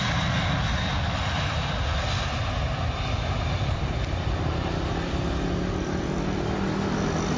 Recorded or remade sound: recorded